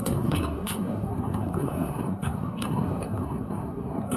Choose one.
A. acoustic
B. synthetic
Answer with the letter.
B